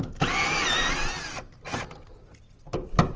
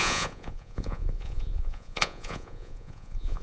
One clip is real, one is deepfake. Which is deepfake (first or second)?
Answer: second